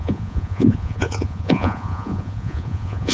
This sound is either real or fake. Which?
fake